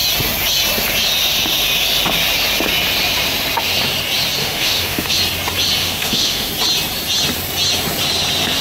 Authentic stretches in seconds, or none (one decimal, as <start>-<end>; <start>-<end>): 0.0-4.4; 5.1-5.8; 6.5-8.6